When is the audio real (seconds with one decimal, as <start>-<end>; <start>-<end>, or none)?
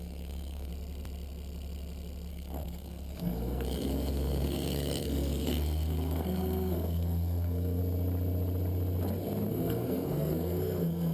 0.7-2.3; 7.8-9.5